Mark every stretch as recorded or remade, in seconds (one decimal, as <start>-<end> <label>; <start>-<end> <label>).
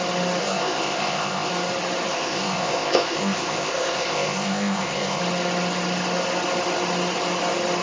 0.0-0.4 recorded; 0.4-1.5 remade; 1.5-2.1 recorded; 2.1-5.2 remade; 5.2-7.8 recorded